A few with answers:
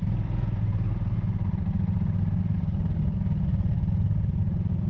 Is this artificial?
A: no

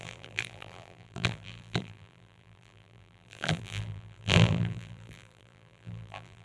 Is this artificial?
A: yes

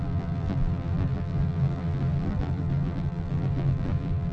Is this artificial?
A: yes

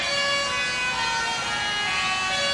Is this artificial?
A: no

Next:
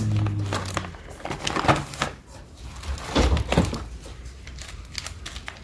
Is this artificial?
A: no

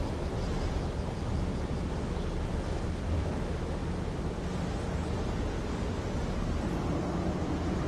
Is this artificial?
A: no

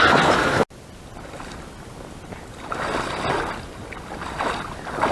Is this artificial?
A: no